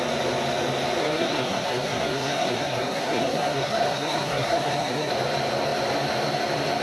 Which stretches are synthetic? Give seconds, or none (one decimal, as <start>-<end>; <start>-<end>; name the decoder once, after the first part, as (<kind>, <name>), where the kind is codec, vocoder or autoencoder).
1.0-5.1 (codec, SNAC)